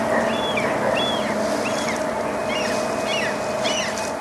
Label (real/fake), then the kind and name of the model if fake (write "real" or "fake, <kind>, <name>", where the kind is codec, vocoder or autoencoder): real